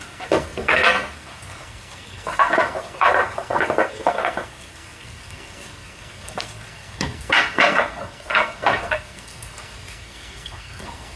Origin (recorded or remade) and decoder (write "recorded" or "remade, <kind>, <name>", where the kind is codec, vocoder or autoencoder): remade, codec, SNAC